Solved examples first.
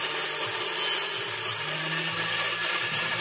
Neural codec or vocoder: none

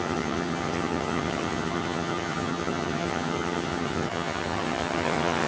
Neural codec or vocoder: vocoder, HiFi-GAN